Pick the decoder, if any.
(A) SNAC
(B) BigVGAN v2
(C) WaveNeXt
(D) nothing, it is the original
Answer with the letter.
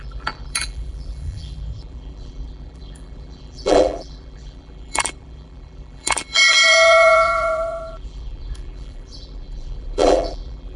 B